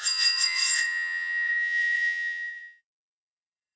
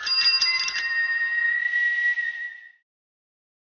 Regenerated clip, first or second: first